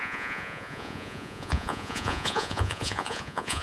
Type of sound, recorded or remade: remade